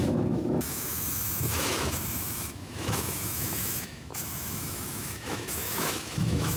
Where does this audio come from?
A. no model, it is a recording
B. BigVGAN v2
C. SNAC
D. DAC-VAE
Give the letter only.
D